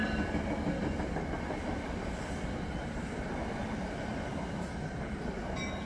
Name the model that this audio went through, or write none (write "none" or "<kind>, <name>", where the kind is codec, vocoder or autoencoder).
none